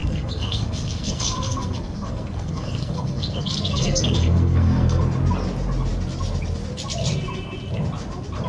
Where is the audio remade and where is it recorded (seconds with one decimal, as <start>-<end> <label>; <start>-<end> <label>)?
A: 0.0-5.0 remade; 5.0-8.5 recorded